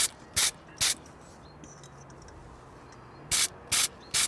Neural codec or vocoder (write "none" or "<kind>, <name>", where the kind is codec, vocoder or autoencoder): none